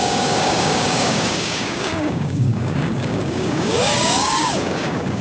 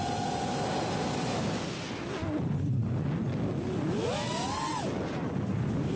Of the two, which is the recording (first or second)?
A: second